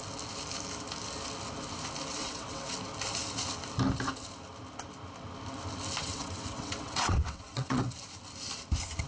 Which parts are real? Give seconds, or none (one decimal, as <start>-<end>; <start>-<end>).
0.0-2.2; 2.7-6.0; 7.8-9.1